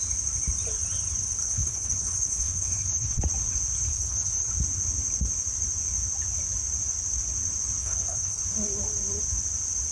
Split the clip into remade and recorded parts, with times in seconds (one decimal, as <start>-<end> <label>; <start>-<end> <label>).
0.0-1.4 recorded; 1.4-3.2 remade; 3.2-3.9 recorded; 3.9-4.5 remade; 4.5-7.8 recorded; 7.8-8.4 remade; 8.4-9.9 recorded

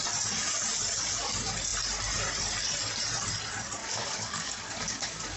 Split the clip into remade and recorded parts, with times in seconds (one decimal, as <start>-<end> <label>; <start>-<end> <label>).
0.0-3.8 recorded; 3.8-5.4 remade

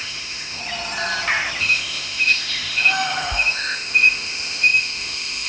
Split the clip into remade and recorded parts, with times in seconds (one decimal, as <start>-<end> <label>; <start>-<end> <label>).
0.0-0.6 remade; 0.6-1.6 recorded; 1.6-5.5 remade

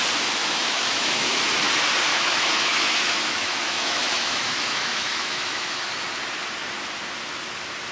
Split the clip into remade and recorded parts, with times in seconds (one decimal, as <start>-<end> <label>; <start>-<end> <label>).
0.0-0.4 recorded; 0.4-1.4 remade; 1.4-2.1 recorded; 2.1-5.9 remade; 5.9-7.9 recorded

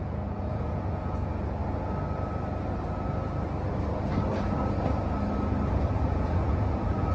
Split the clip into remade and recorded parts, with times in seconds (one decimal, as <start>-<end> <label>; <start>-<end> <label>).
0.0-1.6 remade; 1.6-5.9 recorded; 5.9-7.1 remade

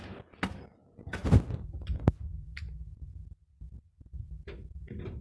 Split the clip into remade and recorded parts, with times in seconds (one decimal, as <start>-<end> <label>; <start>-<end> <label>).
0.0-5.2 recorded